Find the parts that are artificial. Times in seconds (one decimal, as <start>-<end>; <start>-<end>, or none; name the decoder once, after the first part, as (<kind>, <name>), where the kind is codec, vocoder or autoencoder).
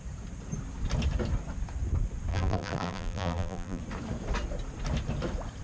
2.3-3.8 (vocoder, BigVGAN v2)